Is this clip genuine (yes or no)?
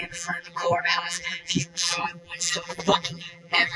no